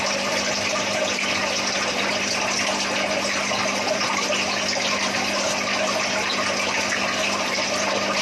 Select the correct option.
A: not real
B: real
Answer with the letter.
B